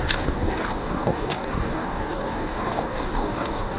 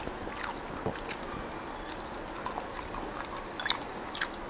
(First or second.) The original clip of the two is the second